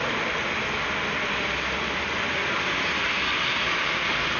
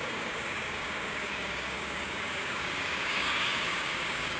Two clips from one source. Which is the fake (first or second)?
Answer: second